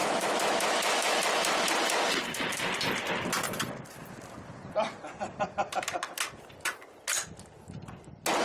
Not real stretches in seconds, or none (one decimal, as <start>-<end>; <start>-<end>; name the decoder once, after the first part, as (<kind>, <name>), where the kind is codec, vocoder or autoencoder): 0.0-1.2 (autoencoder, DAC-VAE)